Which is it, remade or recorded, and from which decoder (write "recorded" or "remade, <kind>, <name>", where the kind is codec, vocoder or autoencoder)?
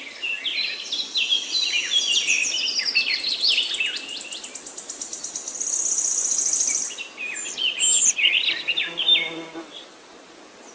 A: recorded